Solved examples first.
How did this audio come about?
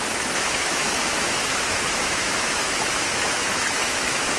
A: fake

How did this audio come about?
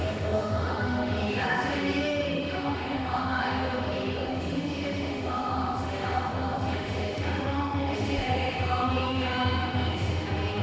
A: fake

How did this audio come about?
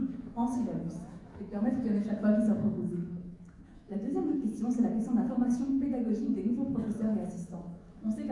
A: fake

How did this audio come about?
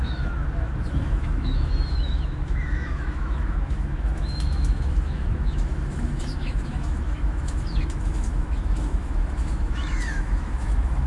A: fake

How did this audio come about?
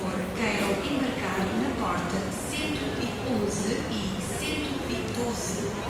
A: real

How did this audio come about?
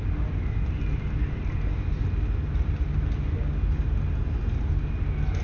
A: real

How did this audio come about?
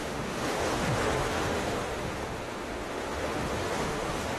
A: fake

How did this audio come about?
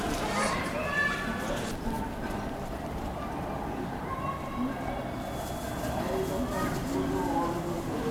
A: real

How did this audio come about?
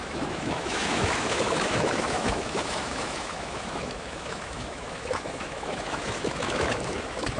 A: fake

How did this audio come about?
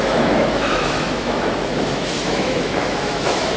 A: fake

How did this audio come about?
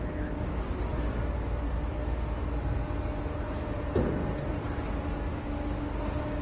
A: real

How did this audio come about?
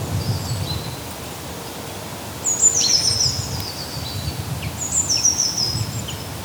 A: real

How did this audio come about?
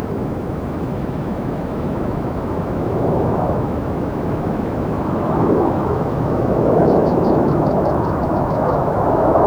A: fake